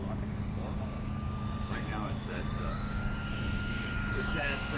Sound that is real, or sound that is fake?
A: fake